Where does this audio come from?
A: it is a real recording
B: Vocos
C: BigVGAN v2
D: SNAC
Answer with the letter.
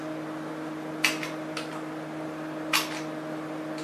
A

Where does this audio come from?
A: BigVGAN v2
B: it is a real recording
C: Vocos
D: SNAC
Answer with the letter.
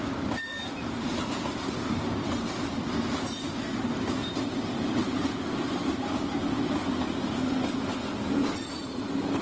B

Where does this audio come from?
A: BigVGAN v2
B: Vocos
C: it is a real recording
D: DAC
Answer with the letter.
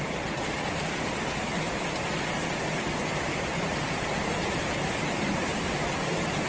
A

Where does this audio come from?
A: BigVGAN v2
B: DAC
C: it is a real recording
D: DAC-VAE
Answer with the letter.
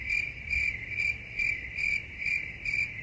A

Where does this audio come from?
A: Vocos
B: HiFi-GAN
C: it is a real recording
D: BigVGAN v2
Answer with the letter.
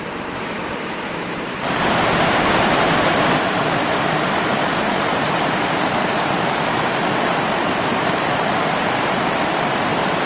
D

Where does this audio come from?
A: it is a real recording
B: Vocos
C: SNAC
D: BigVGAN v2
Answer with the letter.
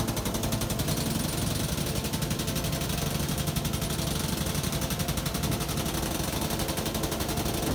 A